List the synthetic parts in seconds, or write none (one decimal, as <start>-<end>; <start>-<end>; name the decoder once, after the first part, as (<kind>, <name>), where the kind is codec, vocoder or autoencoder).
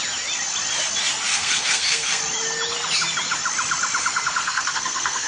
1.3-2.2 (codec, SNAC); 4.4-5.3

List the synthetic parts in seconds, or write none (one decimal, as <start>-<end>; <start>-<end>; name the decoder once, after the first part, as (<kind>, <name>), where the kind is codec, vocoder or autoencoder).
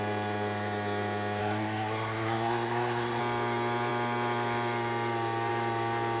1.4-3.2 (codec, SNAC)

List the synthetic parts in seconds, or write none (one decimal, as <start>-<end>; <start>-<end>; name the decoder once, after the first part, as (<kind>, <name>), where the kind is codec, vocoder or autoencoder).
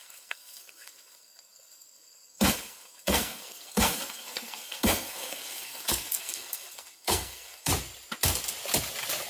0.0-7.7 (codec, SNAC)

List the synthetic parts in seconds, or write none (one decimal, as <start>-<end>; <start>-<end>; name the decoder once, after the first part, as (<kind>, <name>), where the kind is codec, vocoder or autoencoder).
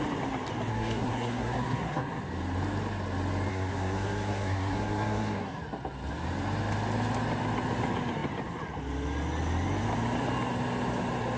0.7-2.2 (codec, SNAC); 3.5-5.6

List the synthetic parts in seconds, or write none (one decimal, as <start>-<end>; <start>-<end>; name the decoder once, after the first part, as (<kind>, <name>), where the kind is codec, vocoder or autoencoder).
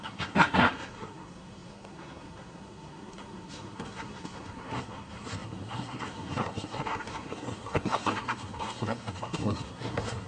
0.0-10.3 (codec, SNAC)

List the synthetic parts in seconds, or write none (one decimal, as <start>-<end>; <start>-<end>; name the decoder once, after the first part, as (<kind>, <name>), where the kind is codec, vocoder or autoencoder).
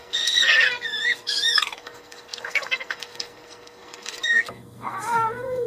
0.0-5.7 (codec, SNAC)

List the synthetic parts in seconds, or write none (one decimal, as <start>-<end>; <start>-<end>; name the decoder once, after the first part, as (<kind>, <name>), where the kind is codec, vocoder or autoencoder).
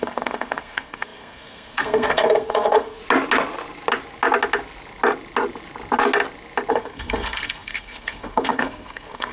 0.0-3.0 (codec, SNAC); 6.7-9.3